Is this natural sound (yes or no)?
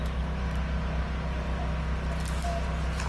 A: yes